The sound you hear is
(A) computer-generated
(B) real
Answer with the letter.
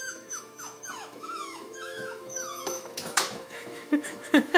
A